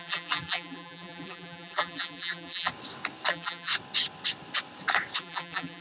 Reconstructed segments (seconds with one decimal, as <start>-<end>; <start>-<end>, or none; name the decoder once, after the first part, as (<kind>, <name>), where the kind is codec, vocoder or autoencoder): 0.0-2.7 (vocoder, BigVGAN v2); 3.3-3.7; 5.2-5.8